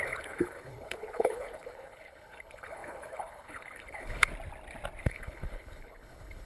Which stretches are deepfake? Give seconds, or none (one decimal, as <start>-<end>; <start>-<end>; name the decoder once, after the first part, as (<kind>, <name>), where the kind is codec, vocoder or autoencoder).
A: 0.0-4.3 (codec, HILCodec); 5.0-6.5